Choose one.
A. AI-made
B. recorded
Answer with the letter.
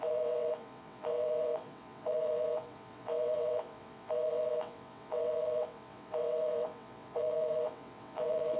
A